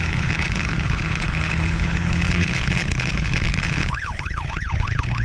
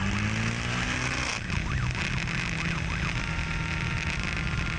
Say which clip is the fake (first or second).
first